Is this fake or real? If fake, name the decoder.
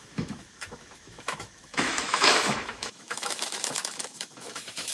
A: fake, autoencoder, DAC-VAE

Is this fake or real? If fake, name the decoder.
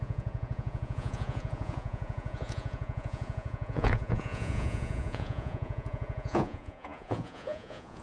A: fake, vocoder, Vocos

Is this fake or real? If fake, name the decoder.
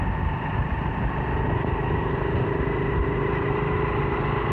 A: real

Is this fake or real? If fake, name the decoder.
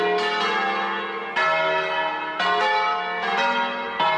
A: real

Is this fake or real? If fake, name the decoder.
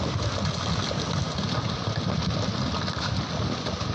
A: real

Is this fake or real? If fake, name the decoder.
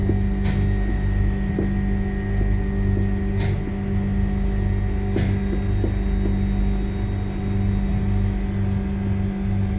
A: real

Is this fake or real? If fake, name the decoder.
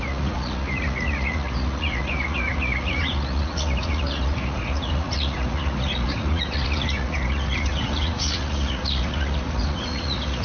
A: fake, vocoder, Vocos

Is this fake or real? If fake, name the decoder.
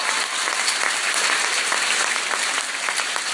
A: real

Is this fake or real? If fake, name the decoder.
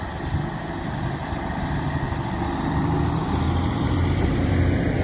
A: fake, vocoder, BigVGAN v2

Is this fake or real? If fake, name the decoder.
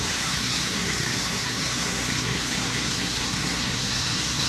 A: fake, codec, SNAC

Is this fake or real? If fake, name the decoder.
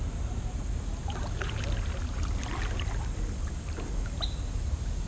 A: real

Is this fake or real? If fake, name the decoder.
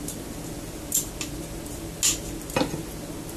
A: real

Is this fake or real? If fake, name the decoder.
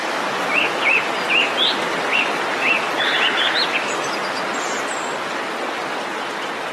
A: real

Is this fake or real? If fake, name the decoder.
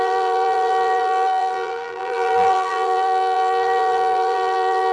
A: fake, vocoder, BigVGAN v2